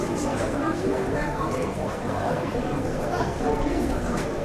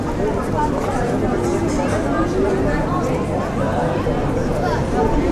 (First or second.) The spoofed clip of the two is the first